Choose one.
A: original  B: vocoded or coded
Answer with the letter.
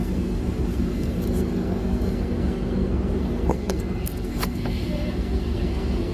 B